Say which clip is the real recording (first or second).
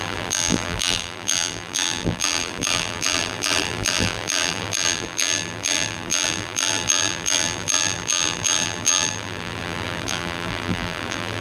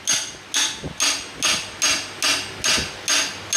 second